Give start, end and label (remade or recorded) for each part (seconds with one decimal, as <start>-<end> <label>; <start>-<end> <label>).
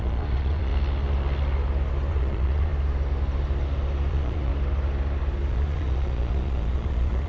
0.0-0.7 remade; 0.7-2.1 recorded; 2.1-2.7 remade; 2.7-4.1 recorded; 4.1-4.5 remade; 4.5-5.5 recorded; 5.5-7.3 remade